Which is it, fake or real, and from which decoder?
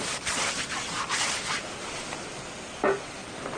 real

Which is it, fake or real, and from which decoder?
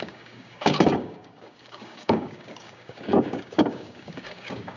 fake, codec, DAC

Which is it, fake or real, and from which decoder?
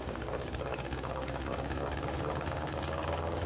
fake, codec, DAC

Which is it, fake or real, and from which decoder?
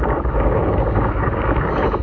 fake, codec, DAC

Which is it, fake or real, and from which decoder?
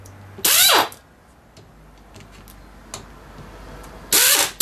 real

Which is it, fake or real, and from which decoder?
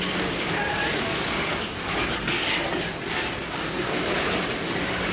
fake, codec, DAC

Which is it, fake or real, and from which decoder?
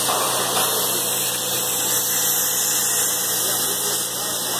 real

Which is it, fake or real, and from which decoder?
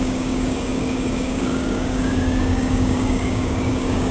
fake, codec, DAC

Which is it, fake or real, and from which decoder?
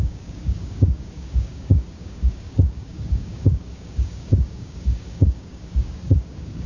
fake, codec, DAC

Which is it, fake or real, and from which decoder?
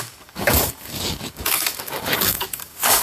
fake, codec, DAC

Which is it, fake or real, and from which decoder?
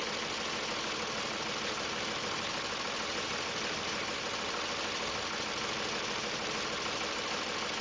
real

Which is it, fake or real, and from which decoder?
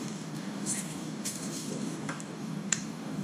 fake, codec, DAC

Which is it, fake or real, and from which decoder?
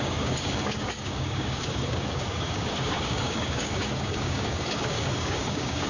fake, codec, DAC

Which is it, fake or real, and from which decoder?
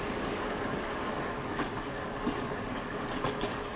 fake, codec, DAC